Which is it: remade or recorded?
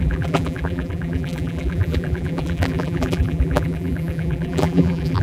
remade